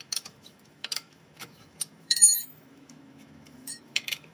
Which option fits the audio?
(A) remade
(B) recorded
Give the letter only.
A